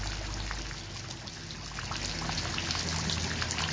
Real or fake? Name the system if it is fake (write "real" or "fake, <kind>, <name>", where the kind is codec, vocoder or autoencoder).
real